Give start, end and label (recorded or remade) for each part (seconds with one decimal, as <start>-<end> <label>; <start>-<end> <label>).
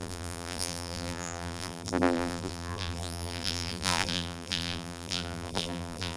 0.0-6.2 remade